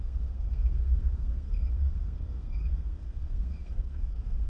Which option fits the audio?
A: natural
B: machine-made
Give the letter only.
B